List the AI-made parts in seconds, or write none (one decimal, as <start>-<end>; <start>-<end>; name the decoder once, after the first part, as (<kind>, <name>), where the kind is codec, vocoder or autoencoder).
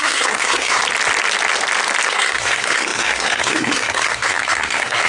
0.0-0.8 (codec, SNAC); 2.1-5.1